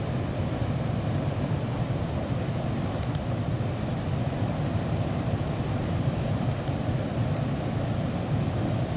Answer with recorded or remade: recorded